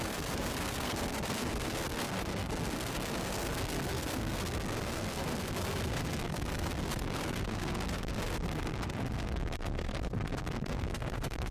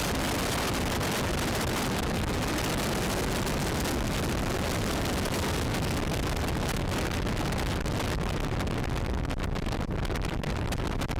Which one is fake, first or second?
first